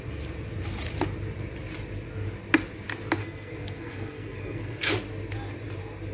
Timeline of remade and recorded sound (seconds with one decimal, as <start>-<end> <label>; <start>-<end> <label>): 0.0-3.2 recorded; 3.2-4.9 remade; 4.9-6.1 recorded